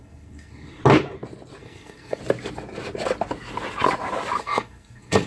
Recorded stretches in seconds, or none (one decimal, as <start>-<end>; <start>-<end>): 0.8-1.6; 2.2-4.4